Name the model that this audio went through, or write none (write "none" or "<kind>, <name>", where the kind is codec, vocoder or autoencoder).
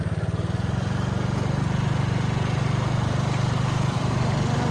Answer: vocoder, BigVGAN v2